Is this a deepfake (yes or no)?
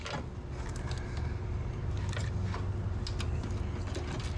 no